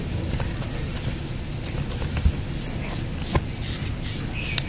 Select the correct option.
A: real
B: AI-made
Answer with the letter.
A